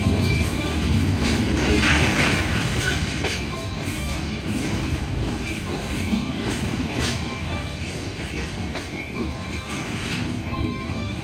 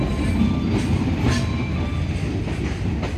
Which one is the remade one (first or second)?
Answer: first